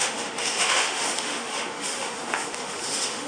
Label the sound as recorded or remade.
remade